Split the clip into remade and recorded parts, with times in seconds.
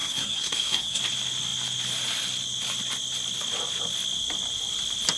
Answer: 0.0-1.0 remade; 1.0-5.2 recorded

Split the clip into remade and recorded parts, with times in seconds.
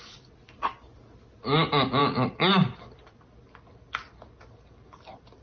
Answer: 0.0-5.4 recorded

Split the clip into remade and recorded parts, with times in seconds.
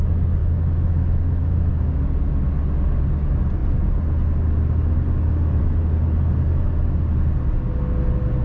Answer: 0.0-0.4 recorded; 0.4-1.9 remade; 1.9-8.4 recorded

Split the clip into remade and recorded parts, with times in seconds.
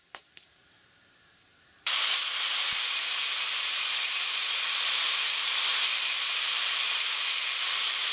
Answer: 0.0-8.1 remade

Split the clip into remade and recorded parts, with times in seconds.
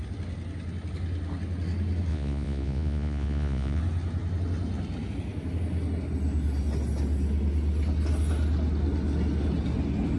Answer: 0.0-2.1 recorded; 2.1-3.8 remade; 3.8-10.2 recorded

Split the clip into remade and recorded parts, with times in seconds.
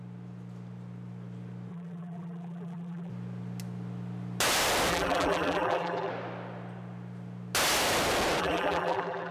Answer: 0.0-1.7 recorded; 1.7-3.1 remade; 3.1-4.9 recorded; 4.9-6.1 remade; 6.1-8.4 recorded; 8.4-9.3 remade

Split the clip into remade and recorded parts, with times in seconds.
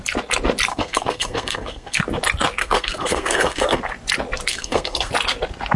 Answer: 0.0-0.7 recorded; 0.7-2.0 remade; 2.0-2.6 recorded; 2.6-3.8 remade; 3.8-4.5 recorded; 4.5-5.1 remade; 5.1-5.8 recorded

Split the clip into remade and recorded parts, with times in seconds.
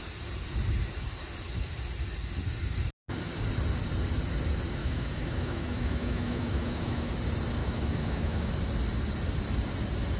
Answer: 0.0-4.8 recorded; 4.8-7.1 remade; 7.1-7.6 recorded; 7.6-8.5 remade; 8.5-10.2 recorded